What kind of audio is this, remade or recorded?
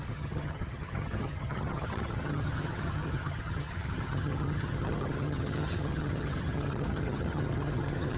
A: remade